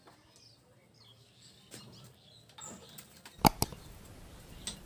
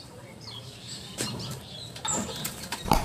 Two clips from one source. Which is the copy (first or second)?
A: second